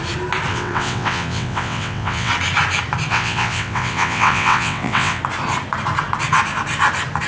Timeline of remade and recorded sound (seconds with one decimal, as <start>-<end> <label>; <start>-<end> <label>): 0.0-0.5 recorded; 0.5-2.3 remade; 2.3-3.1 recorded; 3.1-5.2 remade; 5.2-7.3 recorded